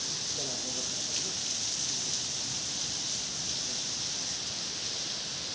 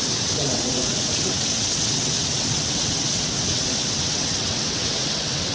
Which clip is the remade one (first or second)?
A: second